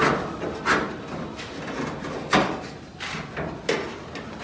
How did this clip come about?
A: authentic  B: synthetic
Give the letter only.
A